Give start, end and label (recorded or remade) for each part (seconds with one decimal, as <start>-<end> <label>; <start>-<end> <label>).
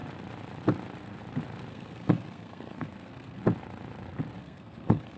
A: 0.0-1.7 recorded; 1.7-3.4 remade; 3.4-4.4 recorded; 4.4-5.2 remade